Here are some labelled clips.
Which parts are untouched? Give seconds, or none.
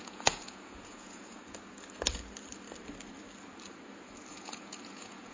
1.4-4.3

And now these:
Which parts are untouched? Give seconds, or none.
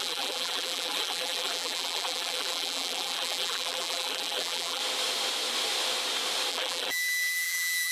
4.8-6.5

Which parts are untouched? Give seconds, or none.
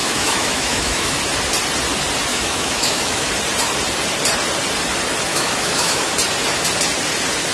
1.2-2.3; 3.3-5.3; 6.1-7.5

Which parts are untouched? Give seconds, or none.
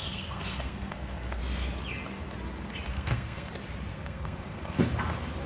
1.4-2.9; 3.5-3.9; 4.8-5.5